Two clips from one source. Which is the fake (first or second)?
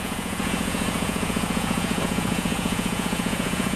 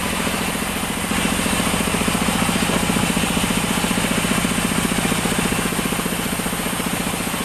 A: first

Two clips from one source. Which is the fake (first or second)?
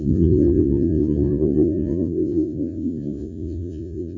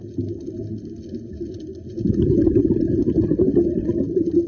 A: first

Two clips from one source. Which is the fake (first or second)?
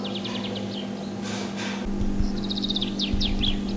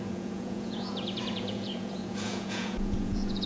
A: second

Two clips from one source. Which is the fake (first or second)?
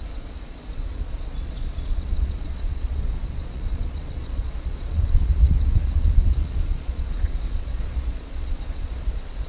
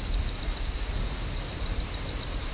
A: first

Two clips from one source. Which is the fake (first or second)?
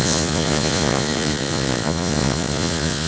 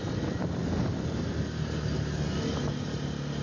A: first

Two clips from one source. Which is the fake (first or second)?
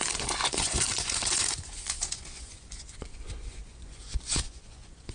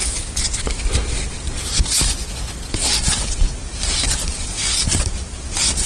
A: first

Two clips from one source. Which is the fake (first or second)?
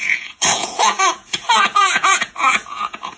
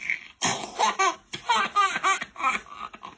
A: first